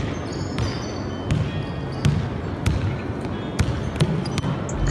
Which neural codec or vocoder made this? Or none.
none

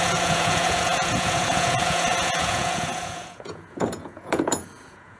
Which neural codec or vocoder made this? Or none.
vocoder, Vocos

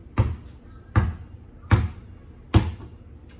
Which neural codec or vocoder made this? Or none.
none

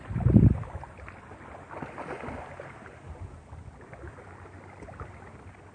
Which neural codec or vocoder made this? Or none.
none